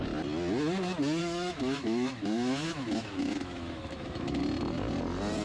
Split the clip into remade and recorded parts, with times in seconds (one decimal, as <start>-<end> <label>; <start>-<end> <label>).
0.0-1.2 recorded; 1.2-4.4 remade; 4.4-5.4 recorded